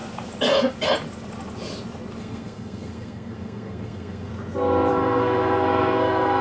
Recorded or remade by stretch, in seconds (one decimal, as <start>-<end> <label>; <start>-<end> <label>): 0.0-2.2 recorded; 2.2-4.3 remade; 4.3-4.9 recorded; 4.9-6.4 remade